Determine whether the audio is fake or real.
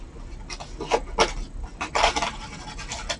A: real